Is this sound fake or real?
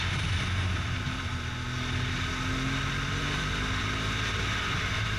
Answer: real